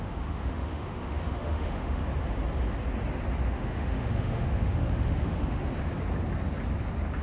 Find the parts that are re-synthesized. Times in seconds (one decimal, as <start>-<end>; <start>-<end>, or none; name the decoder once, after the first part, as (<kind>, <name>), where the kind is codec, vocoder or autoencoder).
0.0-2.0 (autoencoder, DAC-VAE); 3.5-5.6

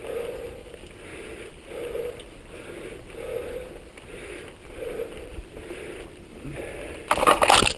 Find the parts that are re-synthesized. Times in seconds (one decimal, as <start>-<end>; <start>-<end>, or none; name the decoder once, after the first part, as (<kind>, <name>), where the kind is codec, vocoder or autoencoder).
none

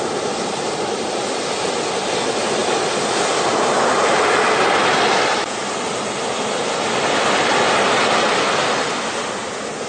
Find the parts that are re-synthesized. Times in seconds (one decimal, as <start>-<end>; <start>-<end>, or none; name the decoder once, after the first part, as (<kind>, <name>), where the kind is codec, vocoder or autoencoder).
none

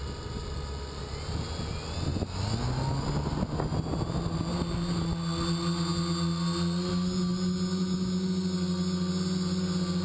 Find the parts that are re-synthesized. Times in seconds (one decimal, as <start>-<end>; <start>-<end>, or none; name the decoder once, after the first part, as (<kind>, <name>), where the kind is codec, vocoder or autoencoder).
none

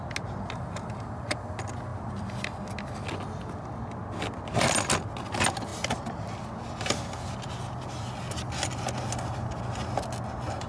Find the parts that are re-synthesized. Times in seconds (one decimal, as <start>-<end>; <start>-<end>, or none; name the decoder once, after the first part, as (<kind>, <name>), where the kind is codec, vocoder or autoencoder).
1.9-2.6 (vocoder, BigVGAN v2)

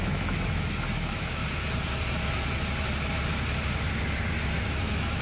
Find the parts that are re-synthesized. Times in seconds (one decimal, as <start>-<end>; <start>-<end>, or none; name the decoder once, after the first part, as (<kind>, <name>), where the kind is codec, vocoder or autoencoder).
0.0-1.4 (autoencoder, DAC-VAE); 4.5-5.2